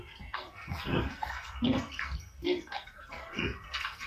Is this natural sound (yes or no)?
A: no